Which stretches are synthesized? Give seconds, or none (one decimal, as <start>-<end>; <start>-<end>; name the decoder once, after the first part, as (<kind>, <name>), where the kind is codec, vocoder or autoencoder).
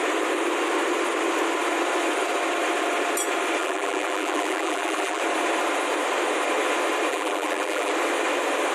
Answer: 3.6-5.2 (vocoder, BigVGAN v2); 7.1-7.9